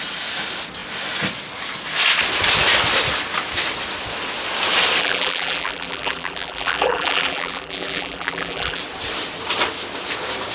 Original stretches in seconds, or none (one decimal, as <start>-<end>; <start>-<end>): 0.0-5.0; 8.8-10.5